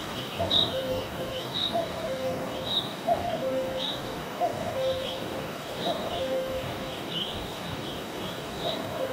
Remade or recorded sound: remade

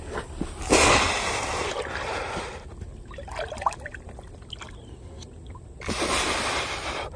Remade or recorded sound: recorded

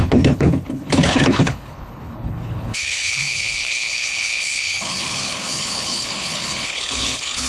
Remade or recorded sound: remade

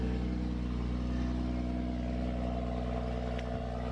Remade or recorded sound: recorded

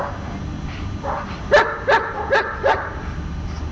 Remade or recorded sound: recorded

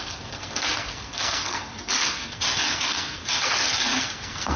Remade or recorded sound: remade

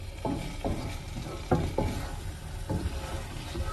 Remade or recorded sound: recorded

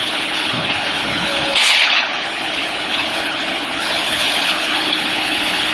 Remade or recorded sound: remade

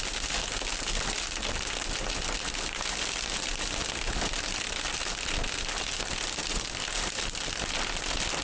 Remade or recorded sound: recorded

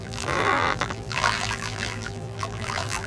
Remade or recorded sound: remade